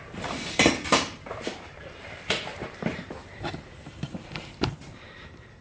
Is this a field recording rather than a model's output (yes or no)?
no